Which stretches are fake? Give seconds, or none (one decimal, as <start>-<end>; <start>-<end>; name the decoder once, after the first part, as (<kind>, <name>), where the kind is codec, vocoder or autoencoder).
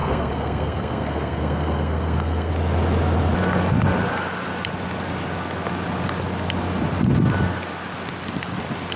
0.0-2.5 (codec, SNAC)